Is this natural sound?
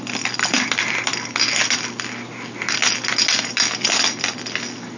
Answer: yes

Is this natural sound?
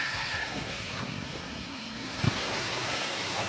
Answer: no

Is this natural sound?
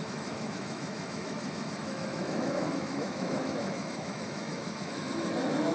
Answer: no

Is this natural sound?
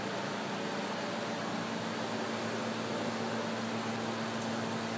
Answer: yes